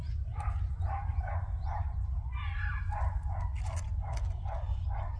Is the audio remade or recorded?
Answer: recorded